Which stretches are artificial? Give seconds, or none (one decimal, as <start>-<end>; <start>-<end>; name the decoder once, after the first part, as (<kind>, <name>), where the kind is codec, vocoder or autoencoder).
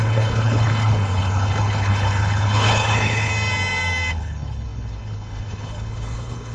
0.0-3.3 (codec, HILCodec); 4.1-6.5